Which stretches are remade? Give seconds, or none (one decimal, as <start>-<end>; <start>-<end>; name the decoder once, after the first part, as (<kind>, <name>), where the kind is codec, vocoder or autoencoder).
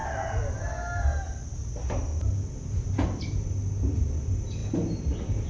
none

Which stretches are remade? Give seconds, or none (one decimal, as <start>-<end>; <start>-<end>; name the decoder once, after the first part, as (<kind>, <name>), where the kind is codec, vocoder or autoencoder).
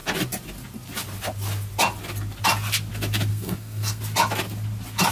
3.3-4.0 (codec, SNAC)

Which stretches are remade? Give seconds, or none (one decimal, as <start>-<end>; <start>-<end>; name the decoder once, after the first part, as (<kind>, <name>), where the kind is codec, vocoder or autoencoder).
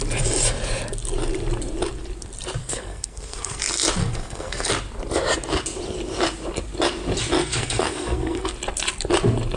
2.6-3.6 (codec, SNAC); 4.0-4.7; 7.4-8.5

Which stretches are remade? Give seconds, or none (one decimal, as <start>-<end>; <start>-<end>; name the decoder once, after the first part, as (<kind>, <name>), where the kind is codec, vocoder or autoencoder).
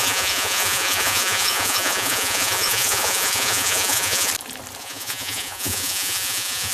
0.0-4.3 (vocoder, Vocos); 4.8-6.7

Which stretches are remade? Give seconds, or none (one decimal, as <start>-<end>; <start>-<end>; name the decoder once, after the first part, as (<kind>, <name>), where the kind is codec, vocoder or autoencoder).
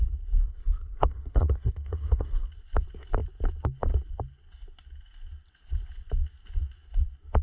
0.4-2.5 (codec, SNAC)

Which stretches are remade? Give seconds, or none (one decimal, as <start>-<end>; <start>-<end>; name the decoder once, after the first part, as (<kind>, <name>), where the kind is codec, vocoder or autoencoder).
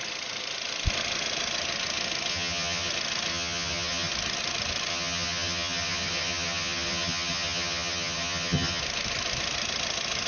2.3-2.9 (vocoder, HiFi-GAN); 3.3-4.1; 4.9-8.8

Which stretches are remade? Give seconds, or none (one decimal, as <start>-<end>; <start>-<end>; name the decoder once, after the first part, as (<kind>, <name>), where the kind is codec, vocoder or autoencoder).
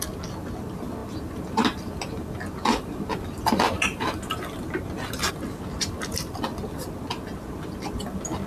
1.0-5.3 (vocoder, BigVGAN v2)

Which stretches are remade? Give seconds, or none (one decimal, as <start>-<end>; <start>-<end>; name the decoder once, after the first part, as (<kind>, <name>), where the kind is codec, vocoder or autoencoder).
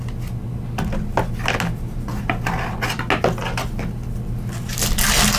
none